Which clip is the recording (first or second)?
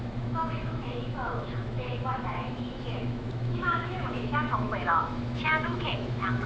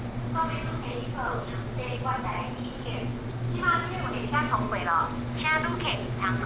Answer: second